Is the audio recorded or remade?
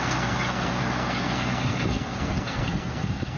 remade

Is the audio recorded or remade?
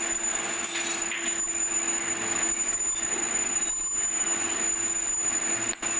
recorded